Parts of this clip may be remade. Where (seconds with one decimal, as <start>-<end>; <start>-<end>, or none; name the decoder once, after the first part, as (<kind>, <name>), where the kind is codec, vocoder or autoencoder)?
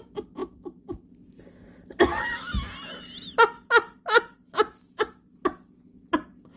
none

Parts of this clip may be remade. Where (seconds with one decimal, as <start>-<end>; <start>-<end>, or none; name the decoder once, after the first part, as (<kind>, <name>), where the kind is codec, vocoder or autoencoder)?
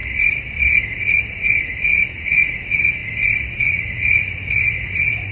1.3-3.0 (vocoder, Vocos); 3.5-5.3